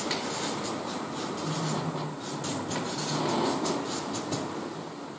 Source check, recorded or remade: recorded